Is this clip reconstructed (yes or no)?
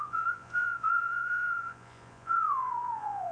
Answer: yes